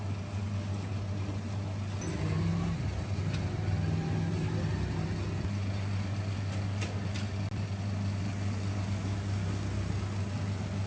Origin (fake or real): real